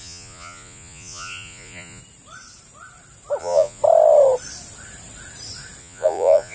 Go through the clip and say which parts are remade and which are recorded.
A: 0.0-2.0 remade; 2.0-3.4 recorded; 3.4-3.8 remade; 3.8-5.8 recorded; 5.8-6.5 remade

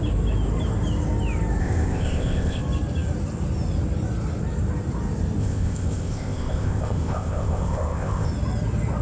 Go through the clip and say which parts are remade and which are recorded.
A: 0.0-1.6 recorded; 1.6-2.6 remade; 2.6-5.4 recorded; 5.4-8.3 remade; 8.3-9.0 recorded

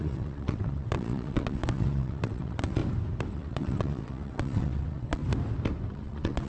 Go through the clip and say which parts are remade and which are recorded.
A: 0.0-2.8 remade; 2.8-3.3 recorded; 3.3-5.2 remade; 5.2-5.9 recorded; 5.9-6.5 remade

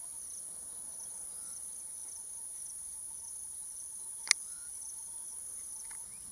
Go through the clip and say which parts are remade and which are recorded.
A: 0.0-6.3 recorded